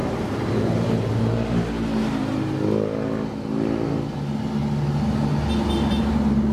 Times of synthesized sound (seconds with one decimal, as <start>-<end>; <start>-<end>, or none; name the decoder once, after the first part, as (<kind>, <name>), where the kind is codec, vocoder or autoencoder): 0.0-1.1 (vocoder, BigVGAN v2)